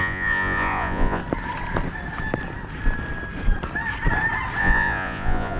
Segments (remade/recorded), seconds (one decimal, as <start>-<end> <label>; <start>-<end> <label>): 0.0-1.2 remade; 1.2-4.6 recorded; 4.6-5.6 remade